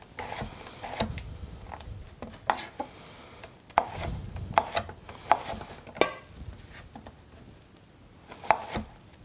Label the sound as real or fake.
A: real